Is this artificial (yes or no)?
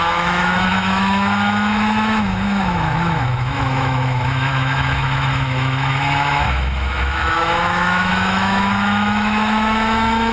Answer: yes